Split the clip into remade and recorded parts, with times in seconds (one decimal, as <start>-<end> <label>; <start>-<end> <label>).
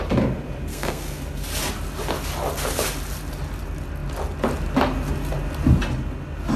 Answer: 0.0-0.7 recorded; 0.7-1.2 remade; 1.2-6.6 recorded